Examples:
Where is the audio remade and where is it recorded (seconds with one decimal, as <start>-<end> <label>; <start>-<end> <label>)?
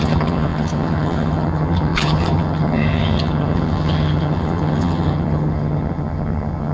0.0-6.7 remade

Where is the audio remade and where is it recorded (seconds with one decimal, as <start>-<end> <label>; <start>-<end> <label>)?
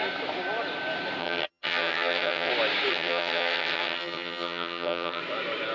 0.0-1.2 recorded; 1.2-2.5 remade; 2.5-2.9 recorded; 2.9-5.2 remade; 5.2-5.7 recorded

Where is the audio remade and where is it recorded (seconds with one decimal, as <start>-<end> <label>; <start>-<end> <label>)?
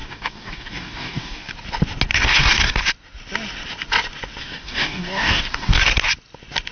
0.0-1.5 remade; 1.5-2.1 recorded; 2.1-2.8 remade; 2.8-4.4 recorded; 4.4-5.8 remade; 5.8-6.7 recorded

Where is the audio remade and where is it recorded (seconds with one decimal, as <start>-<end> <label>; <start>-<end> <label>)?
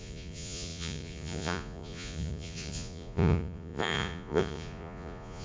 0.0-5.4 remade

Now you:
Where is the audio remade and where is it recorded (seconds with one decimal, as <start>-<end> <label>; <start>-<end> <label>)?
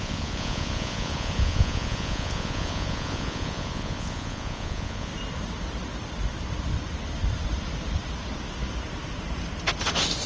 0.0-5.1 remade; 5.1-10.3 recorded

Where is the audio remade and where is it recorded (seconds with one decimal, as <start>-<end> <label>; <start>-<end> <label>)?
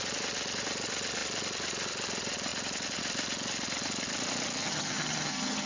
0.0-4.6 recorded; 4.6-5.7 remade